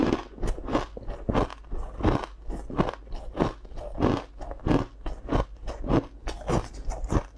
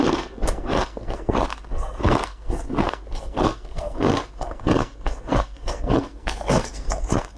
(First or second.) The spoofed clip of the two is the second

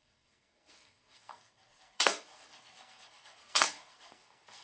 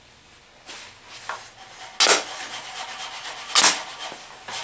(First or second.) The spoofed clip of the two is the first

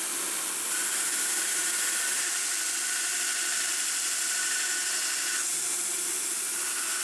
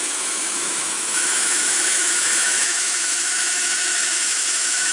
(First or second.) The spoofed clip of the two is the second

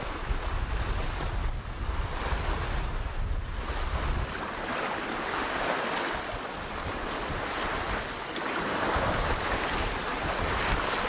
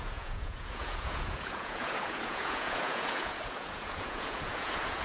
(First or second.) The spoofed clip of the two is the second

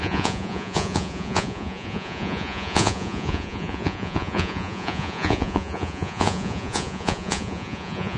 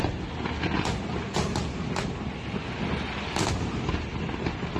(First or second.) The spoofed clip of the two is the first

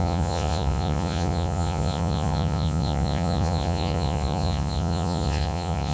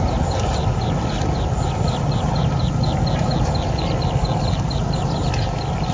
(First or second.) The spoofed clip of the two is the first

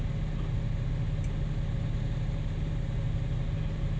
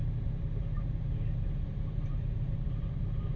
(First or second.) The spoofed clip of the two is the second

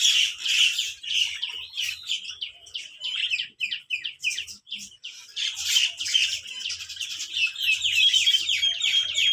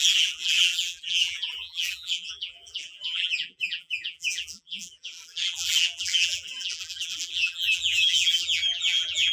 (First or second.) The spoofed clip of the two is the second